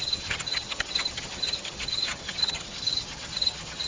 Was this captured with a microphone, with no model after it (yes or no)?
no